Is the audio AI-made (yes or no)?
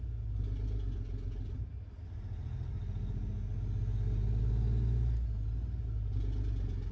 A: no